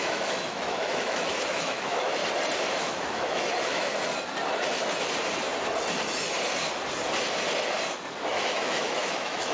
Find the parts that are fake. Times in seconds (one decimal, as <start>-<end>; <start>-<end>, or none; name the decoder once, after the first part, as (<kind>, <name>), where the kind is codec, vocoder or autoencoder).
0.0-2.2 (autoencoder, DAC-VAE); 2.8-3.9; 8.3-9.5